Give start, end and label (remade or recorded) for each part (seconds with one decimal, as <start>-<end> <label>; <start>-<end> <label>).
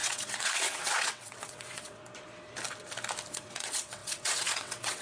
0.0-2.0 remade; 2.0-3.3 recorded; 3.3-5.0 remade